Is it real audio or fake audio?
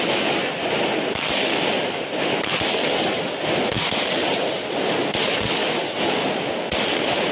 real